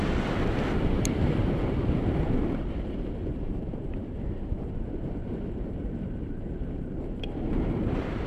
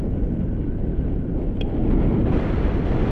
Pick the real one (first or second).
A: second